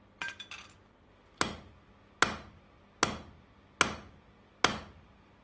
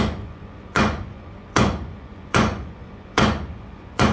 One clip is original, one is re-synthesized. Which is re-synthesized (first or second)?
second